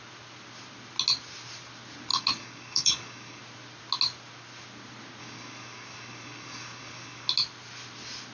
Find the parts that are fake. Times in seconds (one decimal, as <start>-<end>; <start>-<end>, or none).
2.1-3.4; 5.2-7.3